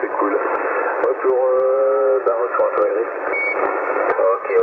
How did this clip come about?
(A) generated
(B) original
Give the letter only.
B